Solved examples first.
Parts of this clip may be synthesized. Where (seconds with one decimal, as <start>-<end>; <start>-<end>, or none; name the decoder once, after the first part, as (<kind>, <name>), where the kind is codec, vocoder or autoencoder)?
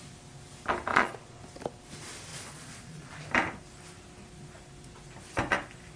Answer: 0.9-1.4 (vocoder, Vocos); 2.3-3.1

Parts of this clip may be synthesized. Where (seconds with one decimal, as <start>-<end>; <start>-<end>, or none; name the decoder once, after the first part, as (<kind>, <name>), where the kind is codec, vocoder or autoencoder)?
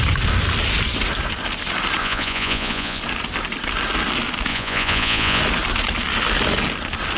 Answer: 2.0-3.0 (vocoder, Vocos); 4.5-5.4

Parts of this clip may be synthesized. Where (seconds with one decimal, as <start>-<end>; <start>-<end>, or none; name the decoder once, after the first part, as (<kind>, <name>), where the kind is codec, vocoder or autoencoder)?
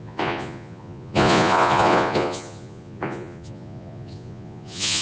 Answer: 0.0-5.0 (vocoder, Vocos)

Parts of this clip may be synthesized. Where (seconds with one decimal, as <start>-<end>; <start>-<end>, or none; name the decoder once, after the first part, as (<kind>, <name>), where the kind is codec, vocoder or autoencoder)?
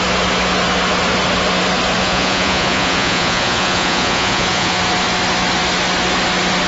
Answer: 2.0-4.8 (vocoder, Vocos)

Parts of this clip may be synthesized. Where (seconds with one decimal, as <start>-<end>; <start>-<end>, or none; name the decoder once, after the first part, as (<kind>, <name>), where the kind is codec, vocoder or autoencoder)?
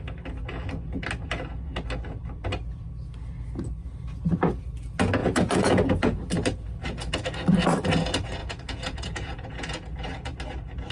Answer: 5.2-6.2 (vocoder, Vocos); 8.4-10.4